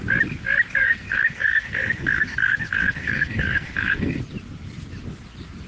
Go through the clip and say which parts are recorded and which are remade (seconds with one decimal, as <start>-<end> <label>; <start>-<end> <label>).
0.0-0.8 recorded; 0.8-4.2 remade; 4.2-5.7 recorded